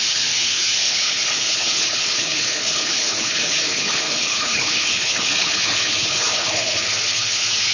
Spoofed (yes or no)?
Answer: yes